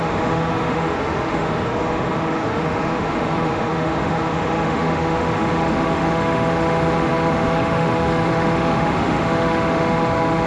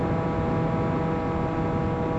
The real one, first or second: second